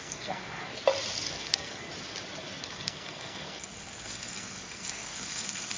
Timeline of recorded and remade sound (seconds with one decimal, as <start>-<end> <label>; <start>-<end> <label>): 0.0-0.7 remade; 0.7-1.3 recorded; 1.3-1.9 remade; 1.9-2.6 recorded; 2.6-5.8 remade